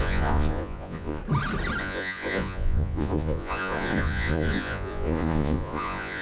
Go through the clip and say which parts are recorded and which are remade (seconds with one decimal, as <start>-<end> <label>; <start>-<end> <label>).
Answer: 0.0-1.2 remade; 1.2-1.8 recorded; 1.8-6.2 remade